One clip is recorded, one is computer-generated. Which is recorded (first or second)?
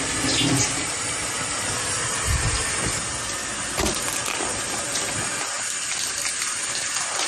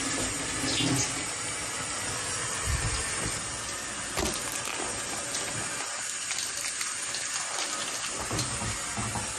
second